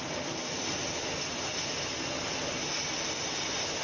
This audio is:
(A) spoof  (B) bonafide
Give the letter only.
B